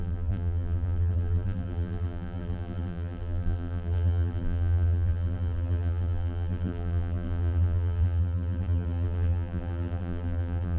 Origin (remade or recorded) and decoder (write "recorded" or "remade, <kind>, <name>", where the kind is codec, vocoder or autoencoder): remade, vocoder, BigVGAN v2